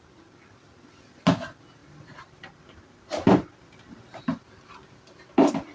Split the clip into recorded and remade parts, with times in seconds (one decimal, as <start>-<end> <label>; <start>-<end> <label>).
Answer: 0.0-1.8 recorded; 1.8-4.5 remade; 4.5-5.7 recorded